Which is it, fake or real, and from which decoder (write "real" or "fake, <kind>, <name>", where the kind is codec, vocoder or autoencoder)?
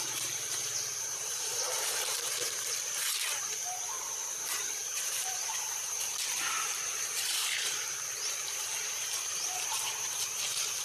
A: fake, vocoder, BigVGAN v2